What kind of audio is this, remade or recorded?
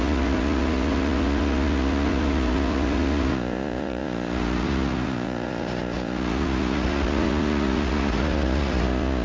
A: remade